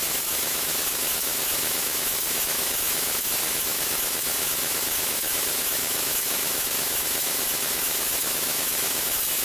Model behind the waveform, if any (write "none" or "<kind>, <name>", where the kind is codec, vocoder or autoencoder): autoencoder, DAC-VAE